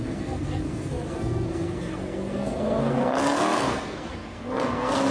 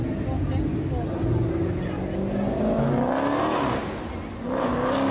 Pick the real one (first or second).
second